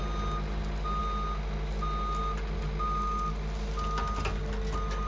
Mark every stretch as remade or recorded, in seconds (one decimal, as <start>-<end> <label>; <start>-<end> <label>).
0.0-5.1 recorded